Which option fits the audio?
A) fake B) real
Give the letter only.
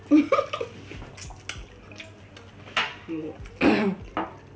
B